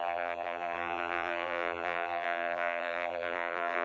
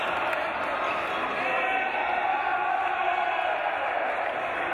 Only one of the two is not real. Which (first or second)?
first